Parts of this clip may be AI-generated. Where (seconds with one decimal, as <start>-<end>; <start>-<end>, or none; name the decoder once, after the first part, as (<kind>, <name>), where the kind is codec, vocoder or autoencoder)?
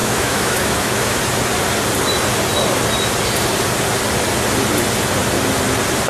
0.0-1.2 (autoencoder, DAC-VAE)